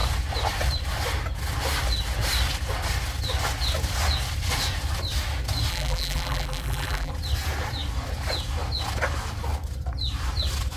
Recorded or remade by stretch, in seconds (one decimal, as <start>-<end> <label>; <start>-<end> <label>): 0.0-5.7 recorded; 5.7-7.1 remade; 7.1-10.8 recorded